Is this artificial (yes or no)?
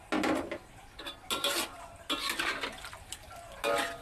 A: no